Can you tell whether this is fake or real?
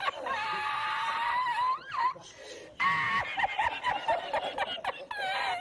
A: real